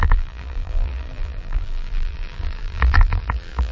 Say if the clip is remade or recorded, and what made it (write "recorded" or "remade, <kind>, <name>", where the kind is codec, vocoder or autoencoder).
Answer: remade, vocoder, BigVGAN v2